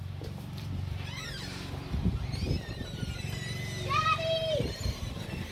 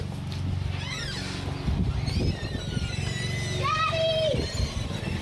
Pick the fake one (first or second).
first